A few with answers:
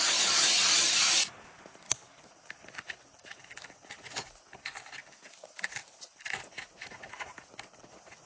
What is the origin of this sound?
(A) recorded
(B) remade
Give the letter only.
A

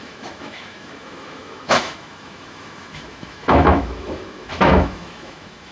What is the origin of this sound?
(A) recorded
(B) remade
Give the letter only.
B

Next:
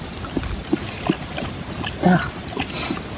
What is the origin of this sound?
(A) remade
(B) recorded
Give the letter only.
B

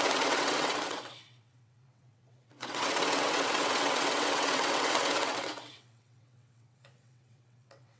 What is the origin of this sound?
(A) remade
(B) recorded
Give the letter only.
A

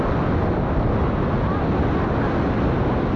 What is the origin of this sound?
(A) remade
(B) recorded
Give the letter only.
B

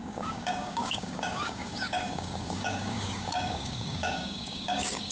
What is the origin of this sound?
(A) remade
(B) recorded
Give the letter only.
A